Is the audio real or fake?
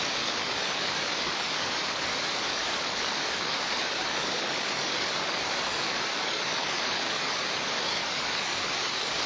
fake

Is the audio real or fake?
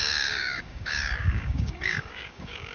fake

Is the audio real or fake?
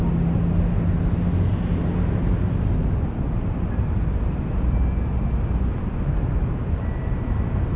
real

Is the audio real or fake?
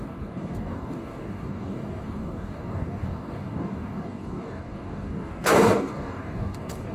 fake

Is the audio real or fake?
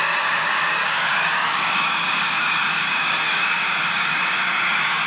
fake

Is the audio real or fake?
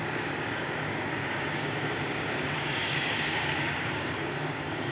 fake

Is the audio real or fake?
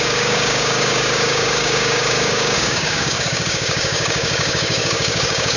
fake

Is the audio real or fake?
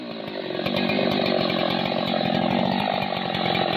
real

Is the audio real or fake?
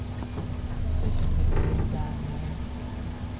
real